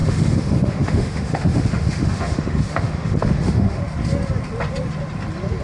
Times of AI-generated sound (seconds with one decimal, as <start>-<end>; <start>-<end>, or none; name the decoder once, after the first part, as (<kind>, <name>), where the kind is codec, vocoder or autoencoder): 0.0-3.8 (autoencoder, DAC-VAE)